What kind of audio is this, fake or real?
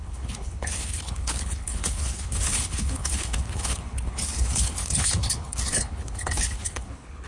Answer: fake